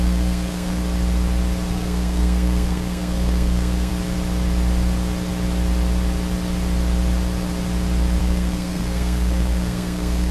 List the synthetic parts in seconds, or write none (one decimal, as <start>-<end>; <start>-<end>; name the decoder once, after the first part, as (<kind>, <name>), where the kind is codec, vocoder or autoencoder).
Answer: 0.0-0.8 (codec, SNAC); 1.7-3.9; 8.2-10.3